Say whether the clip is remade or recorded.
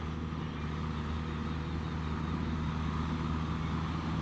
recorded